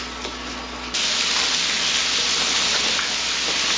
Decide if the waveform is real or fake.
real